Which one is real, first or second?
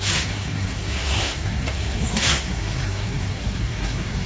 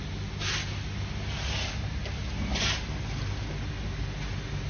second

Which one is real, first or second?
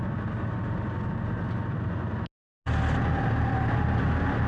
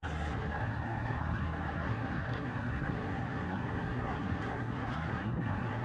first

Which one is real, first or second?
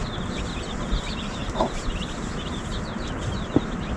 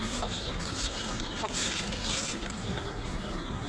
first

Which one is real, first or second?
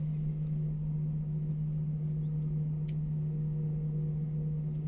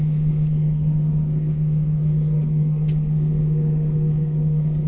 first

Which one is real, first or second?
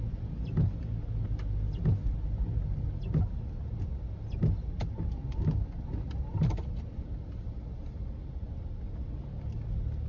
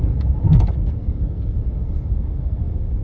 first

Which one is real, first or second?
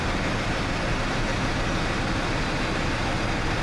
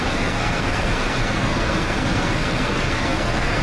first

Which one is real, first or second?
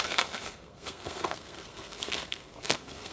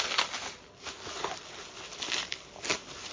second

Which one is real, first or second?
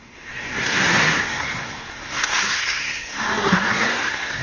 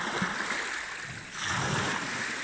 second